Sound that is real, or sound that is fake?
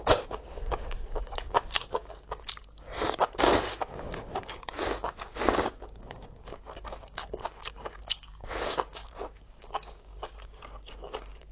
fake